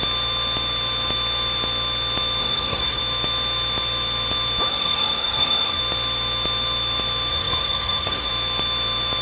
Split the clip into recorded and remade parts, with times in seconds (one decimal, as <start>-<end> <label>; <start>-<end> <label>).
0.0-2.4 recorded; 2.4-3.0 remade; 3.0-4.7 recorded; 4.7-5.8 remade; 5.8-7.3 recorded; 7.3-8.3 remade; 8.3-9.2 recorded